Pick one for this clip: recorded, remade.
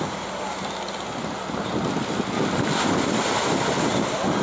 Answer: recorded